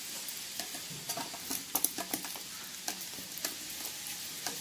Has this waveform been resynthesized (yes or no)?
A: no